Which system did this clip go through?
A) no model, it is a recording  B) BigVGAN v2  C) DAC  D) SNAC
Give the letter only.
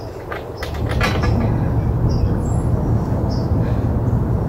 A